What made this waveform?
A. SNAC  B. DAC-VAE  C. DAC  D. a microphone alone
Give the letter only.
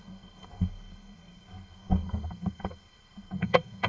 A